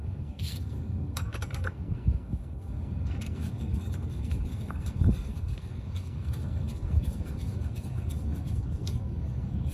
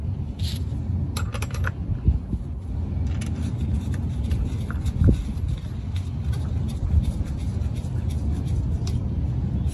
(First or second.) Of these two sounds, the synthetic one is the first